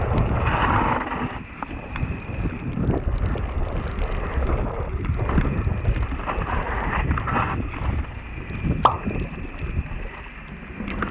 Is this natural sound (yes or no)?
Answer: yes